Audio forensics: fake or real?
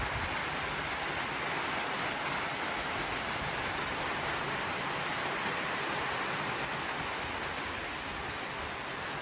real